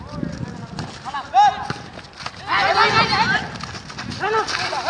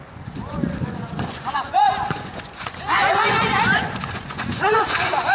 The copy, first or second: second